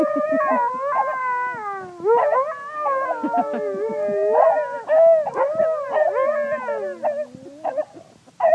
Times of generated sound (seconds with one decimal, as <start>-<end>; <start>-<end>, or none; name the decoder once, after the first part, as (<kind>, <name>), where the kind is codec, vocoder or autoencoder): none